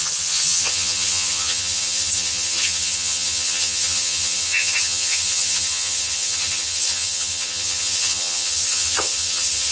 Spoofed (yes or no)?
yes